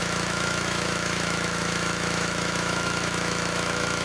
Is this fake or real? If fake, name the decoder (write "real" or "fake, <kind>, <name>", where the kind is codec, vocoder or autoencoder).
fake, autoencoder, DAC-VAE